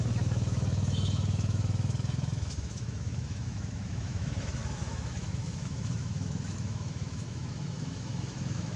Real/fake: fake